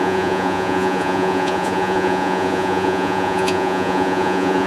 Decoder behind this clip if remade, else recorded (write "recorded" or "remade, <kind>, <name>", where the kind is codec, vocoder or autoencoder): remade, vocoder, Vocos